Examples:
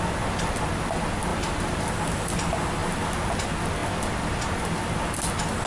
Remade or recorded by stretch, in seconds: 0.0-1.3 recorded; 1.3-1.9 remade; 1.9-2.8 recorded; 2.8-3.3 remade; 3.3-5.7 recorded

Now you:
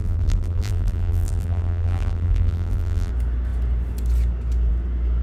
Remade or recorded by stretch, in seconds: 0.0-3.1 remade; 3.1-5.2 recorded

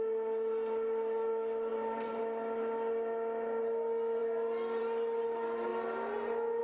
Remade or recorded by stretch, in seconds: 0.0-1.7 recorded; 1.7-2.2 remade; 2.2-6.6 recorded

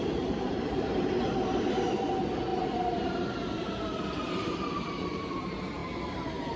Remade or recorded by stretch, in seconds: 0.0-5.8 remade; 5.8-6.6 recorded

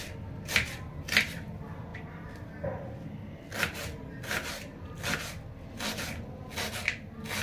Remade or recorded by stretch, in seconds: 0.0-7.4 recorded